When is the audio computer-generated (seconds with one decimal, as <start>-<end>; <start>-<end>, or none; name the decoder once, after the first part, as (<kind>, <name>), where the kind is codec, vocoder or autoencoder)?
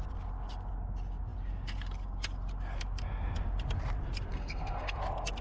4.3-5.0 (codec, SNAC)